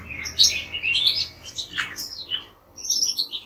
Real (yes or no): no